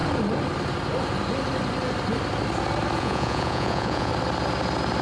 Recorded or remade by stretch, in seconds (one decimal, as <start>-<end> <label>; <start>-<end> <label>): 0.0-3.0 recorded; 3.0-4.1 remade; 4.1-5.0 recorded